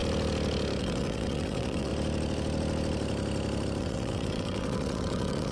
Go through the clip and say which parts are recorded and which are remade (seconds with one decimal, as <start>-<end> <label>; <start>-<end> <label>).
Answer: 0.0-0.8 recorded; 0.8-1.9 remade; 1.9-3.8 recorded; 3.8-5.5 remade